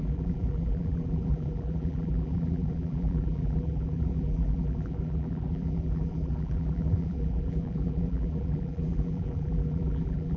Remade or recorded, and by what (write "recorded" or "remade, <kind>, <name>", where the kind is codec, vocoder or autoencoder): remade, vocoder, BigVGAN v2